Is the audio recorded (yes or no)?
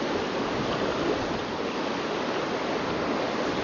yes